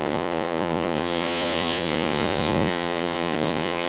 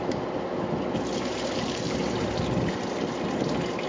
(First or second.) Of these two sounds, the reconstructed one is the first